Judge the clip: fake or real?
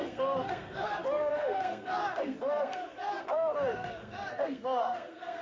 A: fake